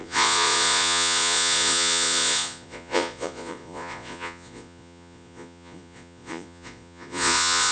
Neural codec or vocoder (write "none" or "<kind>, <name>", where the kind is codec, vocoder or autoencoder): vocoder, Vocos